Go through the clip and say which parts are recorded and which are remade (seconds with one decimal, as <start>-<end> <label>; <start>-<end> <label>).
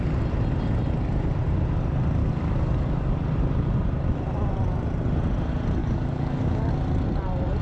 0.0-2.2 recorded; 2.2-3.1 remade; 3.1-5.8 recorded; 5.8-6.7 remade; 6.7-7.6 recorded